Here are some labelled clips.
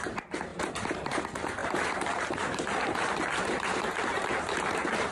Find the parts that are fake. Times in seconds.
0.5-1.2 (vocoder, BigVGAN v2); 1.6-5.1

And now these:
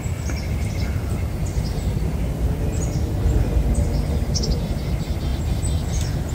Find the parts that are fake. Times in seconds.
none

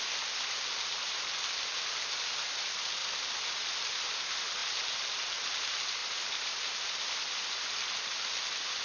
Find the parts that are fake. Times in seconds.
3.0-3.8 (vocoder, BigVGAN v2); 6.0-7.4

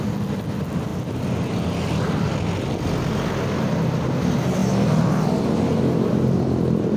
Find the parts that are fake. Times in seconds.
4.6-7.0 (vocoder, BigVGAN v2)

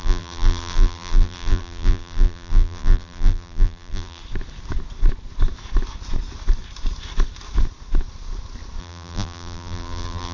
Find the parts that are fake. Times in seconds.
0.0-4.2 (vocoder, BigVGAN v2); 8.8-10.3